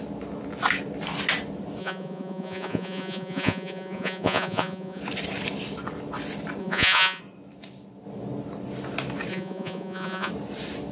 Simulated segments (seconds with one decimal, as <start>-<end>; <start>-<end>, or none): 1.8-5.0; 6.6-7.2; 9.3-10.3